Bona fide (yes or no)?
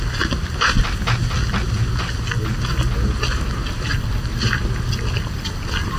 yes